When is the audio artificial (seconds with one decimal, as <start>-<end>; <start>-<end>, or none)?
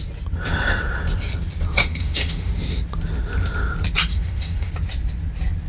1.8-2.5; 4.1-4.7